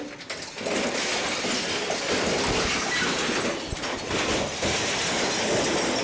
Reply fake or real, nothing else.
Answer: real